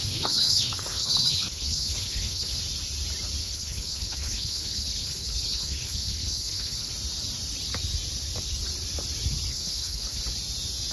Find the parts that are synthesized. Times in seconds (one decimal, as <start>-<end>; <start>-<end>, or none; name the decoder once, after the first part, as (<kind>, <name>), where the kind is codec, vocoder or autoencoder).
0.0-2.6 (codec, HILCodec); 3.4-6.9; 9.5-10.2